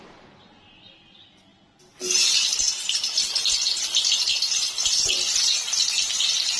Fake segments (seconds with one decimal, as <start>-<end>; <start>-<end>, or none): none